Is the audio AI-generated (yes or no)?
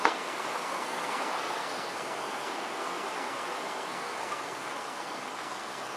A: yes